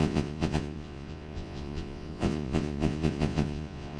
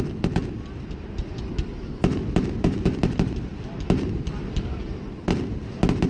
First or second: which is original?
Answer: second